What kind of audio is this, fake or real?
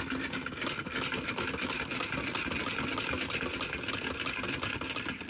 real